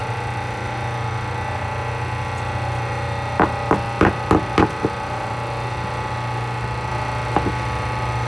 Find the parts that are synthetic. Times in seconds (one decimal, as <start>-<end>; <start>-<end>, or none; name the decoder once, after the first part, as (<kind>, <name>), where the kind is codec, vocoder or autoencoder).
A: none

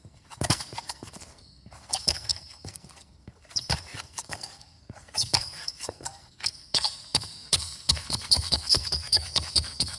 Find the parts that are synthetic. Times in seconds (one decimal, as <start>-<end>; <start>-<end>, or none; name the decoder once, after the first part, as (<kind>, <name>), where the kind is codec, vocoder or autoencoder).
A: 0.0-10.0 (codec, SNAC)

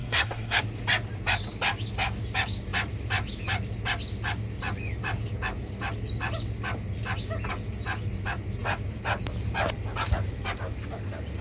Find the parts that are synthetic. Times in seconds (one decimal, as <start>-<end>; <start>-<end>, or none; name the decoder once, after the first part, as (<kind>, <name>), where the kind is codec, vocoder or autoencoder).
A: 0.0-0.6 (codec, SNAC)